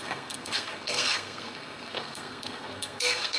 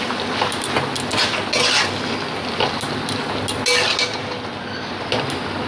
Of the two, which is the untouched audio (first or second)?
second